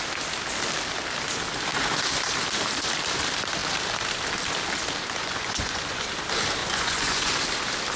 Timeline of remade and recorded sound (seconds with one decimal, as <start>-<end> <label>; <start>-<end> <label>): 0.0-5.2 recorded; 5.2-6.1 remade; 6.1-6.6 recorded; 6.6-7.3 remade; 7.3-8.0 recorded